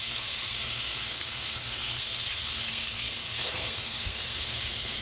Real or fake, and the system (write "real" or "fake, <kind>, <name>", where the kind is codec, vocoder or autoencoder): fake, codec, SNAC